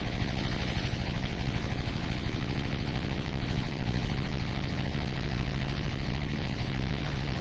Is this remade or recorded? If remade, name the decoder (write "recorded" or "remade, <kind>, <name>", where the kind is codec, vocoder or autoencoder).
remade, vocoder, WaveNeXt